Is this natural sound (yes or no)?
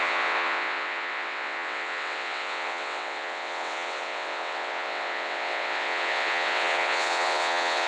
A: no